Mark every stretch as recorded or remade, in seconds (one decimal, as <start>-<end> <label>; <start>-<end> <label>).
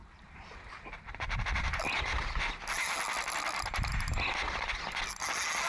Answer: 0.0-1.8 remade; 1.8-5.7 recorded